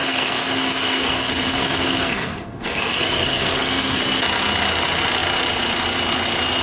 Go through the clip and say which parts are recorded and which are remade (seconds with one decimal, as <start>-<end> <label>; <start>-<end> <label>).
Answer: 0.0-4.0 remade; 4.0-6.6 recorded